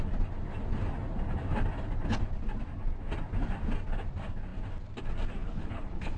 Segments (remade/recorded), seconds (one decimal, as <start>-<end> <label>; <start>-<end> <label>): 0.0-5.4 recorded; 5.4-6.2 remade